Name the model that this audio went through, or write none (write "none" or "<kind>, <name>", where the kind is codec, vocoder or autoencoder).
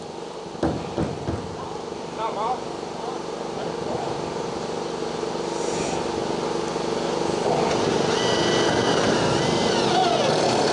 none